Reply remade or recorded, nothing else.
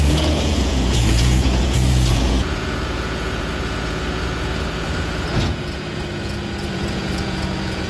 remade